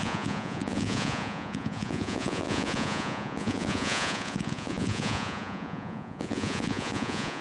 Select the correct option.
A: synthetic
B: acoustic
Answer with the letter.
A